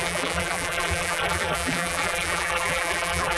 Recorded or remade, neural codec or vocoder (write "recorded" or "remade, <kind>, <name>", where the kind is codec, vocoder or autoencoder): remade, vocoder, BigVGAN v2